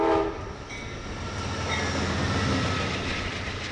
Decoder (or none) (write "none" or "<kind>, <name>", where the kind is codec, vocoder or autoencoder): none